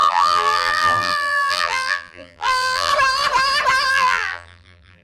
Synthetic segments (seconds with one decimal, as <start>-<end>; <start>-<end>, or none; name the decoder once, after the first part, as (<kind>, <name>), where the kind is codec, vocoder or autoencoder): 0.0-2.9 (vocoder, BigVGAN v2); 3.9-5.0